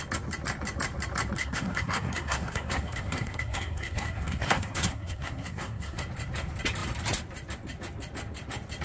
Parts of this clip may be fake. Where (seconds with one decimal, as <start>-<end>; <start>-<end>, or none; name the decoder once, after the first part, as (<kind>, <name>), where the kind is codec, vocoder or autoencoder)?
1.4-6.0 (codec, SNAC)